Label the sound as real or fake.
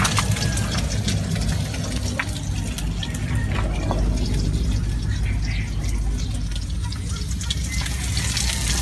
real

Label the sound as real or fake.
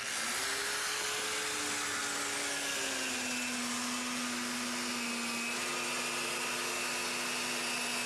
real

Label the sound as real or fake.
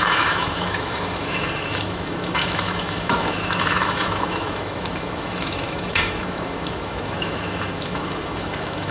fake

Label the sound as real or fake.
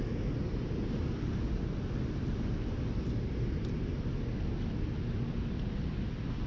real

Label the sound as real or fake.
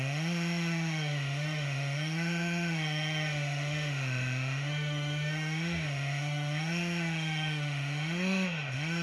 fake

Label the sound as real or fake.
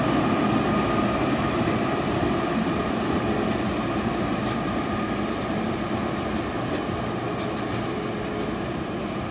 real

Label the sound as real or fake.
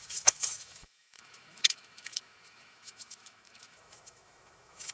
fake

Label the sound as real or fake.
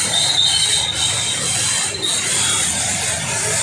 real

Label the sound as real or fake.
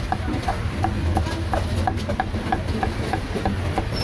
real